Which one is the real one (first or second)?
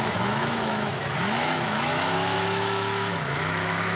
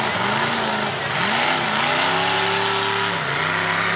second